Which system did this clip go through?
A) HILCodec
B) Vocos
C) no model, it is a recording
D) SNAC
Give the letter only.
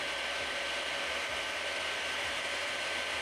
C